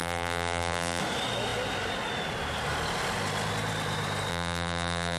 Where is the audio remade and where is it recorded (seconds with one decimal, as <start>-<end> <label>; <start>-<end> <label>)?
0.0-1.0 remade; 1.0-4.3 recorded; 4.3-5.2 remade